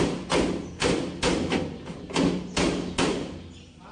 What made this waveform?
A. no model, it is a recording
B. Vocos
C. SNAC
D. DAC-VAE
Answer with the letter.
A